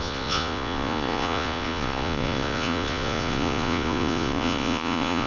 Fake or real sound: fake